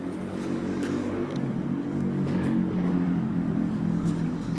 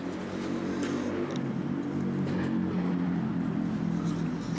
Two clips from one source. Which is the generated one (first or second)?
first